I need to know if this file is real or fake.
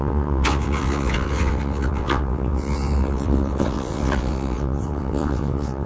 fake